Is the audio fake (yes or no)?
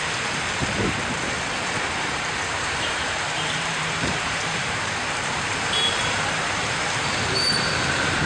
yes